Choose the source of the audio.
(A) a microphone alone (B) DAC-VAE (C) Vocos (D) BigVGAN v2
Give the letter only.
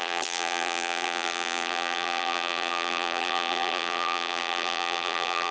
D